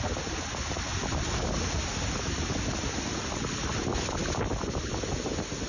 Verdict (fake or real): real